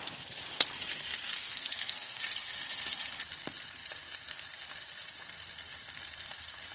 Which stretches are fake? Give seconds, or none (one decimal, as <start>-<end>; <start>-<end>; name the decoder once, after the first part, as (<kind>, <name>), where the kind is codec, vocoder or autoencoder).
1.3-2.2 (codec, SNAC)